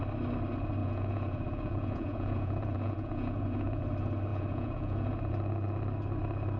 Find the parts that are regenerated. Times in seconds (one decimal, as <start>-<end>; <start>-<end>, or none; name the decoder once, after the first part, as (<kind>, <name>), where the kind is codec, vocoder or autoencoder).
0.8-3.8 (vocoder, Vocos); 4.3-5.3